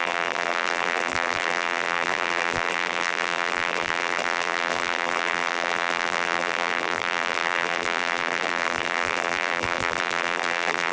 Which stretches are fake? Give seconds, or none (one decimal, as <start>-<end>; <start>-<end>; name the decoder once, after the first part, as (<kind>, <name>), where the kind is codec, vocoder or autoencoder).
0.0-10.9 (vocoder, BigVGAN v2)